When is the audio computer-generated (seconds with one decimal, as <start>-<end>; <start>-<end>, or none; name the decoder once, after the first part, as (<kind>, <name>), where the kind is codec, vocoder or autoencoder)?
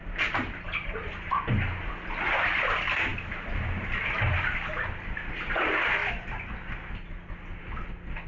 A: none